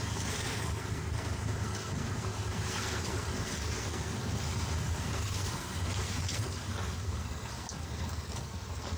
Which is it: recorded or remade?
remade